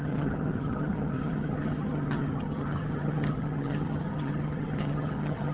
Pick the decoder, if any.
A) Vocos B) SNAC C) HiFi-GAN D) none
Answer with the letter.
C